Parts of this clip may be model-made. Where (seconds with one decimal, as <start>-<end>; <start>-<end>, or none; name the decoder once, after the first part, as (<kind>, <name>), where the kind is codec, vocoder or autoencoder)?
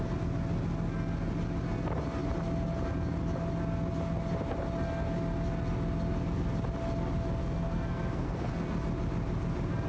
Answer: 7.4-8.5 (codec, SNAC)